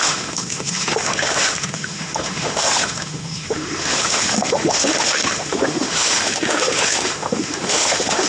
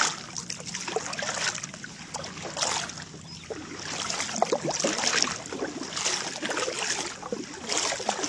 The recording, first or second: second